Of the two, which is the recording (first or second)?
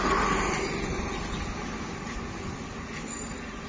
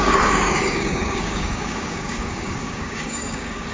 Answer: first